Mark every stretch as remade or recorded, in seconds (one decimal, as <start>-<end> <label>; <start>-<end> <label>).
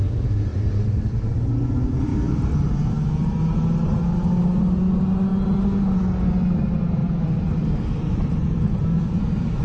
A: 0.0-0.5 recorded; 0.5-1.3 remade; 1.3-2.1 recorded; 2.1-3.1 remade; 3.1-7.0 recorded; 7.0-9.6 remade